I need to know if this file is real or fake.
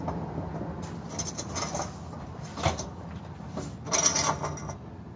real